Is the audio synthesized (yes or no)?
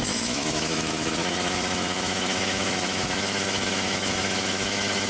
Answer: yes